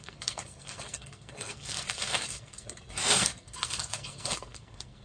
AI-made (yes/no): yes